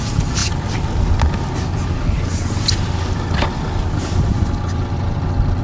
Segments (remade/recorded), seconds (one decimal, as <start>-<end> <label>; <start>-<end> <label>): 0.0-5.6 recorded